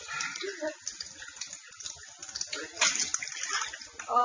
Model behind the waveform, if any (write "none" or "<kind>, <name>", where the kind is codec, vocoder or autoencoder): none